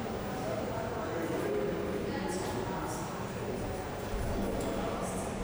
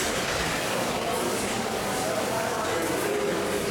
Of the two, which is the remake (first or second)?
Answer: second